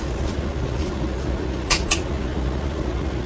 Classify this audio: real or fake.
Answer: fake